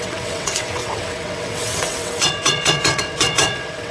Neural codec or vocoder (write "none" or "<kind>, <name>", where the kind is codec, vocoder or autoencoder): vocoder, WaveNeXt